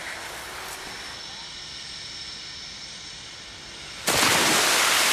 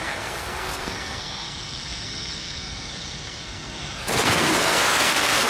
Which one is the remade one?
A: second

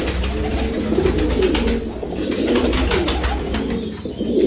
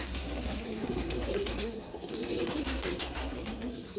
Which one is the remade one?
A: second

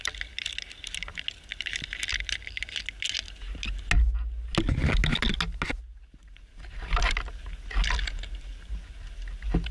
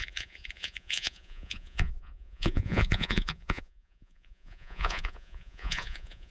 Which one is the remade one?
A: second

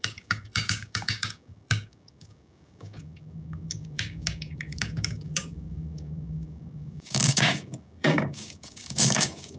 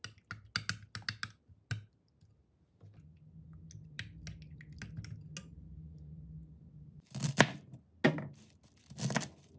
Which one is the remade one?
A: first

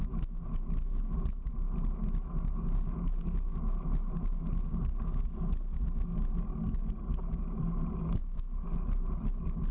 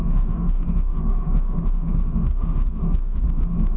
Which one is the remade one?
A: second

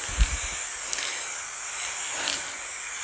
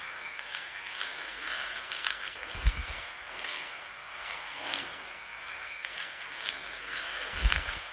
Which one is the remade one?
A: second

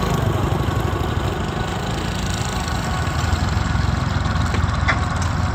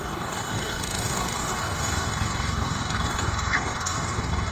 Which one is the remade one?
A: second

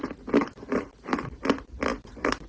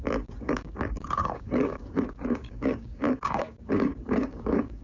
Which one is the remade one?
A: second